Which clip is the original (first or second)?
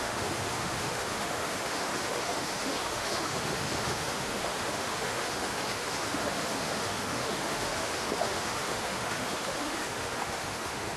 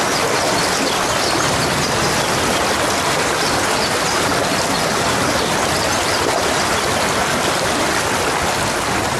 second